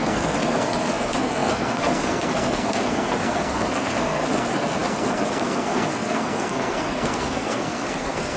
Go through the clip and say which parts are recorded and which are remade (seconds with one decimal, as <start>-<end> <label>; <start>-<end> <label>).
0.0-8.4 remade